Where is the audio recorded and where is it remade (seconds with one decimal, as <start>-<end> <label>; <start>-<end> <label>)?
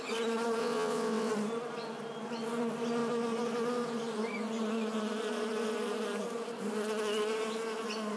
0.0-0.6 recorded; 0.6-1.3 remade; 1.3-8.2 recorded